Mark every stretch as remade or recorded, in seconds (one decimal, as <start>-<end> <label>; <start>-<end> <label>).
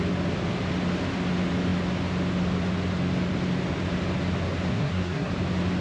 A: 0.0-4.7 recorded; 4.7-5.3 remade; 5.3-5.8 recorded